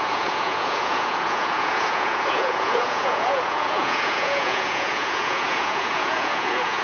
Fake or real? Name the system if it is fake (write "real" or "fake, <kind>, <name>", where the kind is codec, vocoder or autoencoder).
fake, vocoder, Vocos